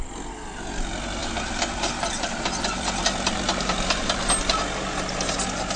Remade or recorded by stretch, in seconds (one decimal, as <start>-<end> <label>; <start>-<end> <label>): 0.0-1.2 recorded; 1.2-4.3 remade; 4.3-5.8 recorded